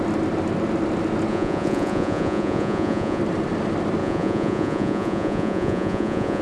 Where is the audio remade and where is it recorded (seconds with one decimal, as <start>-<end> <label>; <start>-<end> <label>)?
0.0-1.3 recorded; 1.3-3.2 remade; 3.2-4.0 recorded; 4.0-6.4 remade